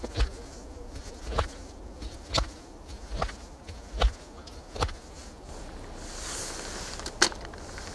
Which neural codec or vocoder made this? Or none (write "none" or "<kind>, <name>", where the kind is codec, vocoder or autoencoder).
none